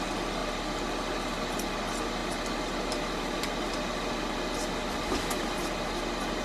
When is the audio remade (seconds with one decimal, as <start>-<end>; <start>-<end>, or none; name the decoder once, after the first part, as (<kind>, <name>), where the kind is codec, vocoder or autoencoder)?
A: 0.4-1.4 (vocoder, BigVGAN v2); 2.2-6.0